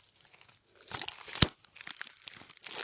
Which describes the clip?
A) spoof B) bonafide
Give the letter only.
B